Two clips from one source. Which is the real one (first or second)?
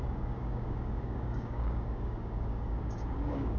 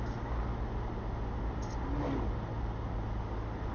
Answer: second